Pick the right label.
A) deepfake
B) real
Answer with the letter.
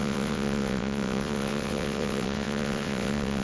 A